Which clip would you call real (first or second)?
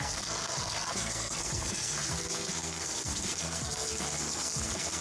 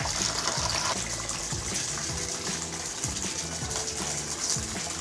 second